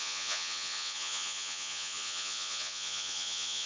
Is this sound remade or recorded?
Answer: remade